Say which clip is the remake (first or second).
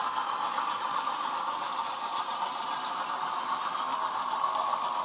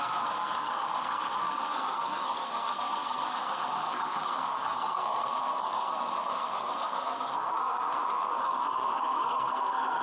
second